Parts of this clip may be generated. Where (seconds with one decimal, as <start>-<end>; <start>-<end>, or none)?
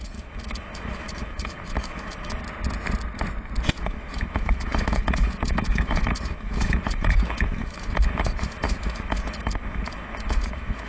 0.0-2.4; 3.7-10.9